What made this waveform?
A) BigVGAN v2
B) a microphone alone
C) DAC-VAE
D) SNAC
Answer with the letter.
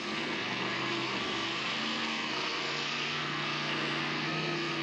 D